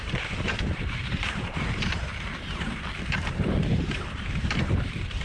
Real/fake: fake